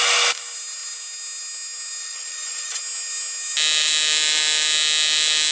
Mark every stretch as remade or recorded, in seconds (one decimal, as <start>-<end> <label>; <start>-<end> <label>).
0.0-2.0 recorded; 2.0-2.8 remade; 2.8-5.5 recorded